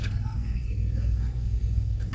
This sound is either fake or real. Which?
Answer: fake